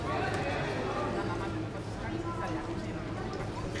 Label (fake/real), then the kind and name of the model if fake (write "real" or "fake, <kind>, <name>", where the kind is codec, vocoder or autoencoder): real